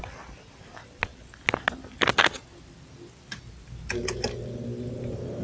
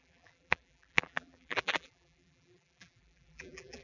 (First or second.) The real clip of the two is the first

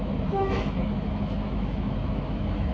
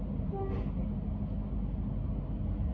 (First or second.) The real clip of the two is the second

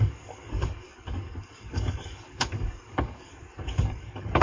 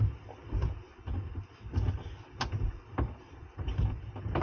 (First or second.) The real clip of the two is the second